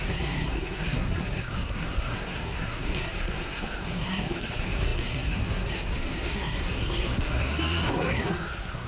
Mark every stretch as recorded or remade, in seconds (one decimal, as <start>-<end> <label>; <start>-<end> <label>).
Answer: 0.0-8.9 remade